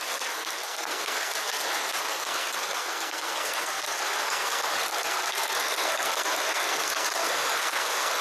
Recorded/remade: remade